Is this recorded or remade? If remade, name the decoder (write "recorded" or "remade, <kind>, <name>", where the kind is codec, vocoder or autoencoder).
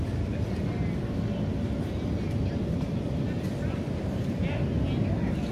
recorded